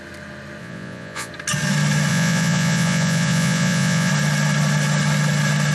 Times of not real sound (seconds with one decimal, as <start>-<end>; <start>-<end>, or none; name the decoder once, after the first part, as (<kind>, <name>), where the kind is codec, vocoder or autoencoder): 0.6-1.3 (vocoder, Vocos); 2.1-4.1